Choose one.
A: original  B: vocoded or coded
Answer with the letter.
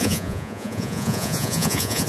B